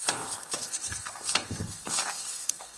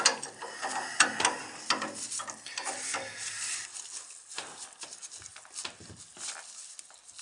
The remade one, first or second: first